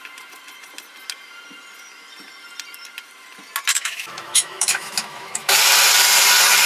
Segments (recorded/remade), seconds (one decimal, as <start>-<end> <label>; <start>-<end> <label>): 0.0-3.7 recorded; 3.7-5.6 remade; 5.6-6.7 recorded